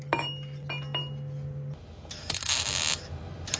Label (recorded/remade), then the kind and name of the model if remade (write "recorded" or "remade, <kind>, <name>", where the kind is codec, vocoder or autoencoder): recorded